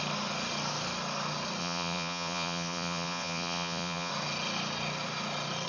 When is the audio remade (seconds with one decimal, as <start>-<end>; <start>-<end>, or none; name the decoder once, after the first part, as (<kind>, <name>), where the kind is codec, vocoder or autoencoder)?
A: 1.6-4.1 (vocoder, Vocos)